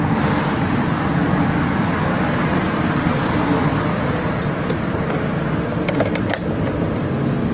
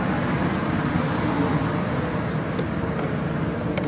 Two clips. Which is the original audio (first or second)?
second